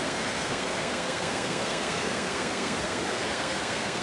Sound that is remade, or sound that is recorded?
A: remade